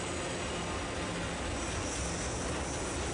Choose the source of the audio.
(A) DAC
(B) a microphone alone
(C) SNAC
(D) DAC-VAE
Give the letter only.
B